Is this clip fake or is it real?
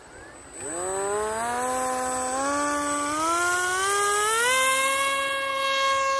real